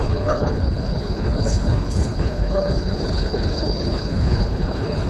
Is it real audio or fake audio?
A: fake